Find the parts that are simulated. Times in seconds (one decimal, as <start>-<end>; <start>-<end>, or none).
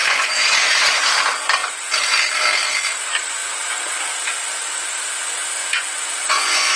0.0-1.1; 3.4-3.9; 5.6-6.8